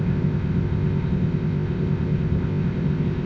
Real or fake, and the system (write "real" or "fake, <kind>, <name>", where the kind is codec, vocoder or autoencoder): fake, codec, ZipCodec